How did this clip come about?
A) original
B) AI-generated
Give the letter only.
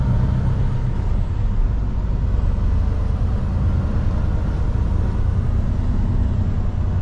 A